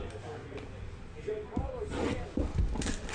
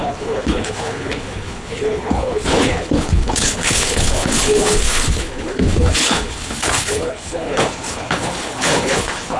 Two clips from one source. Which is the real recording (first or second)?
first